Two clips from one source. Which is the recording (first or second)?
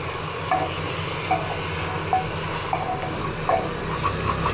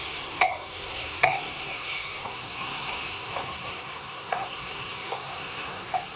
first